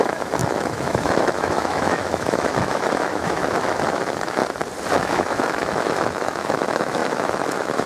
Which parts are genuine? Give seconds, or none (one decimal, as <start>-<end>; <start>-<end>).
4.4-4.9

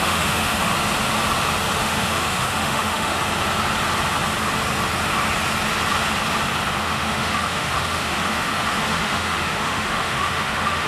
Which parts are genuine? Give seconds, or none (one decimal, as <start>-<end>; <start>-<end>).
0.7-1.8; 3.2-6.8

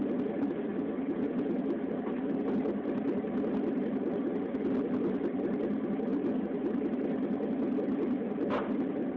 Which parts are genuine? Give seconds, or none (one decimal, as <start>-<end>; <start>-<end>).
0.0-9.2